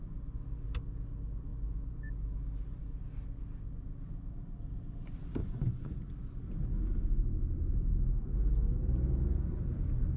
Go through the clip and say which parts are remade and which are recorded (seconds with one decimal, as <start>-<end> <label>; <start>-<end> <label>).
0.0-5.4 recorded; 5.4-6.0 remade; 6.0-10.2 recorded